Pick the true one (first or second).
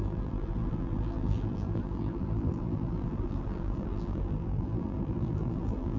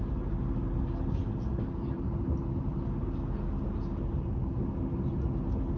second